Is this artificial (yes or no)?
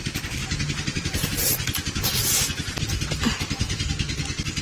no